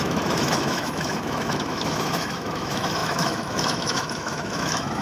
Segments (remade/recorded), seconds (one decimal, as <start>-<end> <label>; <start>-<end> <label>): 0.0-5.0 remade